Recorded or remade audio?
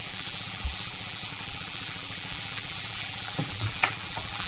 remade